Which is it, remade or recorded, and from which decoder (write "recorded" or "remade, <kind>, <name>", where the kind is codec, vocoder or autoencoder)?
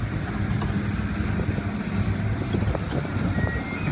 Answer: recorded